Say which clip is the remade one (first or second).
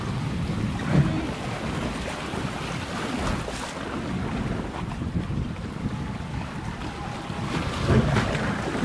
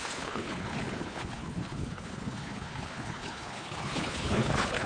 second